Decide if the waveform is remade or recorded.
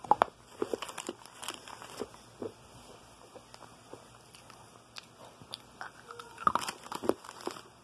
recorded